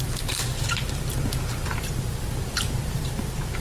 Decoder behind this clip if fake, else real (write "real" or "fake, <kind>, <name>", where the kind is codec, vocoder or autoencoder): fake, vocoder, BigVGAN v2